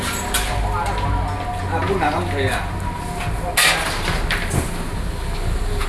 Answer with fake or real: real